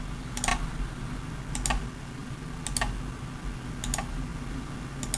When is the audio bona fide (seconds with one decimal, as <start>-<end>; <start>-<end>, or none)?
0.0-5.2